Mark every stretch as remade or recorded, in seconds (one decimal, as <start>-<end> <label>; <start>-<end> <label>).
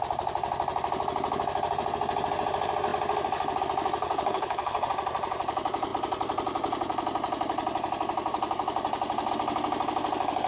0.0-4.0 recorded; 4.0-4.9 remade; 4.9-10.5 recorded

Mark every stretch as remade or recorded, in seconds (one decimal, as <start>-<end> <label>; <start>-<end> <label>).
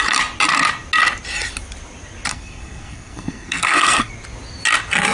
0.0-2.3 recorded; 2.3-4.1 remade; 4.1-5.1 recorded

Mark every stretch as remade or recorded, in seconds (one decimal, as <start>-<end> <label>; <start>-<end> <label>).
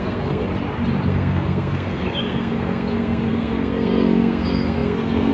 0.0-0.5 remade; 0.5-1.1 recorded; 1.1-5.3 remade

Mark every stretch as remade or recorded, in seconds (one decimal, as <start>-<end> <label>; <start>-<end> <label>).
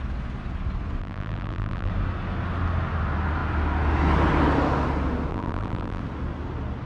0.0-1.0 recorded; 1.0-1.9 remade; 1.9-5.3 recorded; 5.3-6.0 remade; 6.0-6.9 recorded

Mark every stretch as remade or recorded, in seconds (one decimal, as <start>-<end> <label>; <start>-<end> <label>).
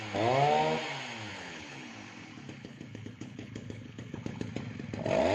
0.0-1.3 recorded; 1.3-1.9 remade; 1.9-2.6 recorded; 2.6-4.5 remade; 4.5-5.3 recorded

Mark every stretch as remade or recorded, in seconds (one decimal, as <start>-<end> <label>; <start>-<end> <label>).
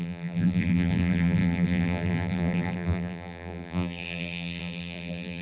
0.0-5.4 remade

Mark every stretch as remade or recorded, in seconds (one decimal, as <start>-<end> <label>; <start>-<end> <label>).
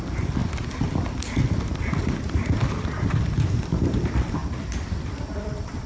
0.0-4.4 recorded; 4.4-5.9 remade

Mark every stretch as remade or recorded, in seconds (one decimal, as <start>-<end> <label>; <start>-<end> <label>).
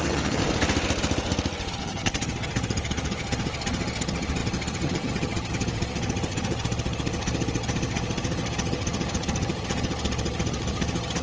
0.0-0.4 remade; 0.4-1.7 recorded; 1.7-11.2 remade